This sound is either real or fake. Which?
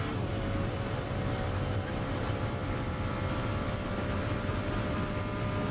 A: real